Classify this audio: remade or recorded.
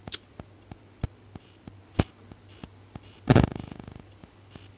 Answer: recorded